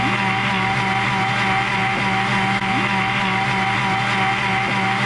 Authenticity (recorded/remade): recorded